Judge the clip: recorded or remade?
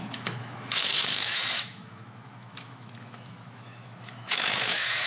remade